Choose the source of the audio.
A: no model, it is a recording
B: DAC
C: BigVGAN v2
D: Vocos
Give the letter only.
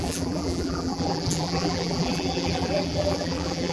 C